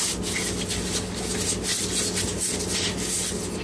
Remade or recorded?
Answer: recorded